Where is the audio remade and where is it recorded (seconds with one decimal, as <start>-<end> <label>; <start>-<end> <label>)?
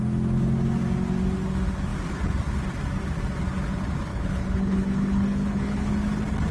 0.0-4.1 recorded; 4.1-5.9 remade; 5.9-6.5 recorded